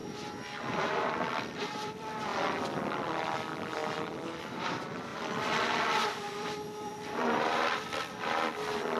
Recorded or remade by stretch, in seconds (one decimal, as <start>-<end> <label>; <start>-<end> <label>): 0.0-0.6 recorded; 0.6-2.3 remade; 2.3-3.1 recorded; 3.1-3.8 remade; 3.8-4.4 recorded; 4.4-5.1 remade; 5.1-6.3 recorded; 6.3-9.0 remade